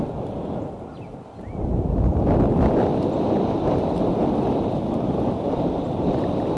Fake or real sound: real